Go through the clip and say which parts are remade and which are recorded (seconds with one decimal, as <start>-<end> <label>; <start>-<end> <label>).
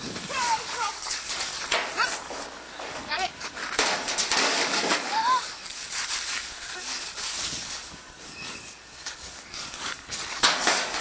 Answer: 0.0-1.5 remade; 1.5-2.2 recorded; 2.2-3.6 remade; 3.6-4.4 recorded; 4.4-11.0 remade